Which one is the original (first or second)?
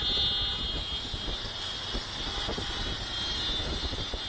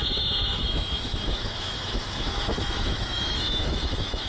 first